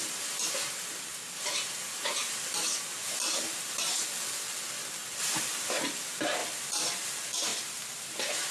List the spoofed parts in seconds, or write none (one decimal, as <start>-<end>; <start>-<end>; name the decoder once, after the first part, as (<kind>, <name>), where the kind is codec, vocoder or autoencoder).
6.4-7.1 (vocoder, BigVGAN v2); 7.5-8.5